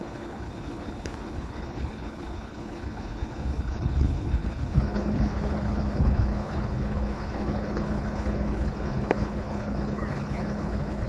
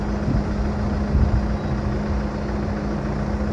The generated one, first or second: first